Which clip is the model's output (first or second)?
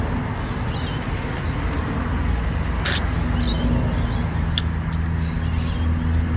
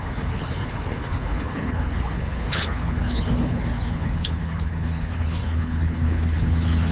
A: second